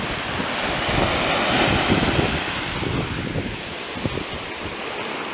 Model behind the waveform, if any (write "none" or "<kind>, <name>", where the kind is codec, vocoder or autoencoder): none